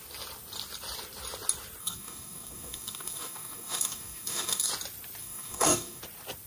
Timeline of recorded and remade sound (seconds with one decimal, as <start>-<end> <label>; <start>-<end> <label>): 0.0-1.8 recorded; 1.8-4.7 remade; 4.7-5.2 recorded; 5.2-6.0 remade; 6.0-6.5 recorded